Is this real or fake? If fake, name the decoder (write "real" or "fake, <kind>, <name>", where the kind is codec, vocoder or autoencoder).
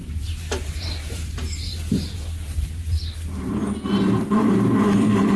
fake, vocoder, BigVGAN v2